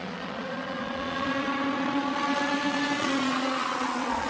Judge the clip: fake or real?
fake